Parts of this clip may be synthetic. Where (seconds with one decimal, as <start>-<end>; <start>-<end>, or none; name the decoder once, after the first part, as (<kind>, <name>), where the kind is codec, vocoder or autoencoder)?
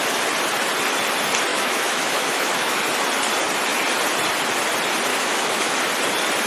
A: 1.5-2.8 (autoencoder, DAC-VAE); 5.1-5.8